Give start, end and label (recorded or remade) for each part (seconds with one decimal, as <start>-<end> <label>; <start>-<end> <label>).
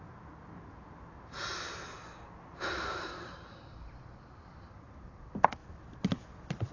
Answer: 0.0-6.7 recorded